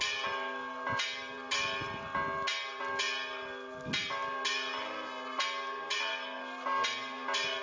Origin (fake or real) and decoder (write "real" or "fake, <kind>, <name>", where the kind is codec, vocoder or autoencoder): real